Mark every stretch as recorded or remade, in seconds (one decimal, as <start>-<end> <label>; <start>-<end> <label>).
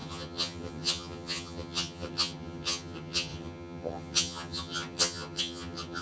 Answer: 0.0-6.0 remade